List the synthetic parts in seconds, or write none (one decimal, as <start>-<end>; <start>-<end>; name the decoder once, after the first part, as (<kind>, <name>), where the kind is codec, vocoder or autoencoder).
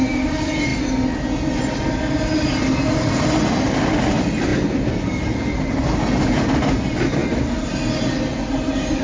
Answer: none